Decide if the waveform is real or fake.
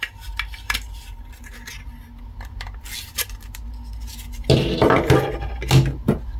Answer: real